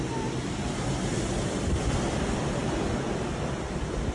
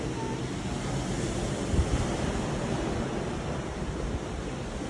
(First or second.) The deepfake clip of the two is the first